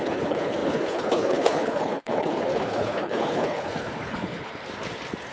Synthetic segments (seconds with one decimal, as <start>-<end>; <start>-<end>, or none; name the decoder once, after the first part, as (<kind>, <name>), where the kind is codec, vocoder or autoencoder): 0.0-4.5 (codec, HILCodec)